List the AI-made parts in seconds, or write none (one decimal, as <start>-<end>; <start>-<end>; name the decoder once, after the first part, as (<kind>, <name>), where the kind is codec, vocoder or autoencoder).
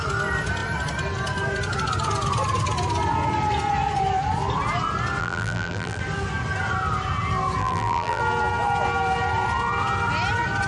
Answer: 5.2-6.0 (vocoder, BigVGAN v2); 7.6-8.2